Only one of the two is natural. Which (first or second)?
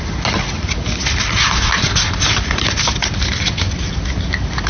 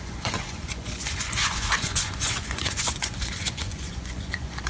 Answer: first